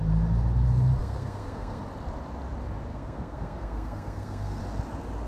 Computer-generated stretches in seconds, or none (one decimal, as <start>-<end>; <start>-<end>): 1.0-1.8; 2.9-4.6

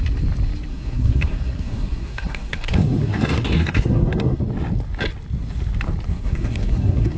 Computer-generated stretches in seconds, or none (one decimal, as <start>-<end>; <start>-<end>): 0.7-4.4; 6.1-7.2

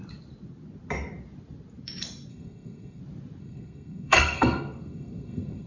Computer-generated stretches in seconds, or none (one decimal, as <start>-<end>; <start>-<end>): 2.3-3.0; 3.4-5.7

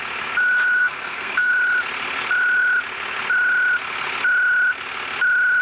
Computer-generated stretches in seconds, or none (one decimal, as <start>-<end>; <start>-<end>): 0.8-1.5